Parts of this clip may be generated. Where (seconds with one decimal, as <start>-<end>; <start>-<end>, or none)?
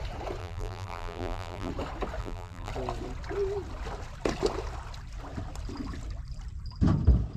0.4-1.7; 2.2-2.7